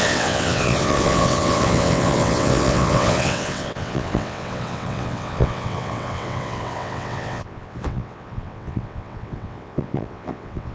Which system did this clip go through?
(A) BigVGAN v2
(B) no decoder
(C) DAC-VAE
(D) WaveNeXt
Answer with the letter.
D